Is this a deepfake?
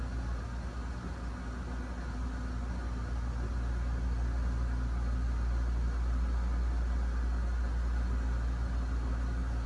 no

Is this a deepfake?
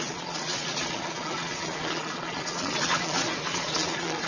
yes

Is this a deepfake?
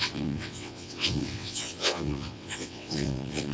yes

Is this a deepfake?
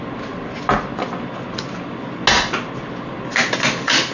no